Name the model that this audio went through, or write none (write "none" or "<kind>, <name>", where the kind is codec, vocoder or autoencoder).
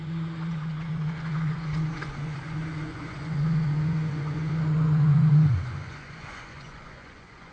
vocoder, Vocos